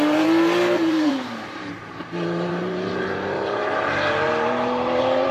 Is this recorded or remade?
remade